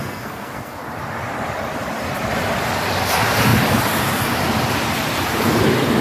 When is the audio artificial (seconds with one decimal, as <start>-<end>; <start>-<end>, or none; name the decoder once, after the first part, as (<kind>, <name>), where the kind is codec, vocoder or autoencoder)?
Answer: 0.0-0.8 (codec, SNAC)